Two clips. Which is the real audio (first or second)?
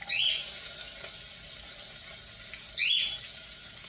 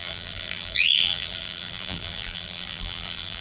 first